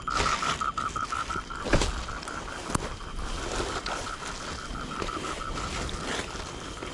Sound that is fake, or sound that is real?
real